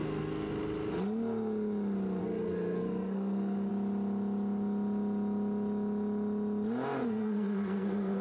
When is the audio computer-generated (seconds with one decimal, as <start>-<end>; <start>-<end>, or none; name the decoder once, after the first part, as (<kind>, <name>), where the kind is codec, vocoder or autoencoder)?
0.0-0.5 (codec, SNAC); 2.2-3.7; 7.0-8.2